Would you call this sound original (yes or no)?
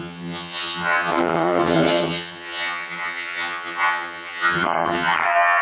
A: no